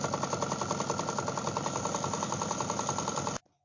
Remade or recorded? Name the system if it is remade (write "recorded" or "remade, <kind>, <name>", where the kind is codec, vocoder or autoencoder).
recorded